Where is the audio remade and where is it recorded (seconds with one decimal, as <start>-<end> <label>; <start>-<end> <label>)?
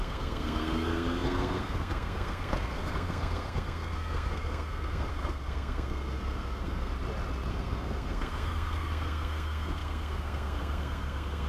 0.0-6.9 remade; 6.9-7.5 recorded; 7.5-11.5 remade